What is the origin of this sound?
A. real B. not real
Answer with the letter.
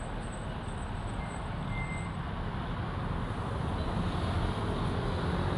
A